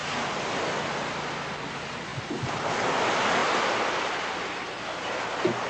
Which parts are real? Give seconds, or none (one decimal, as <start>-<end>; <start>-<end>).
0.0-5.7